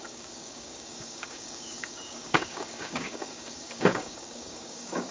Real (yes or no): no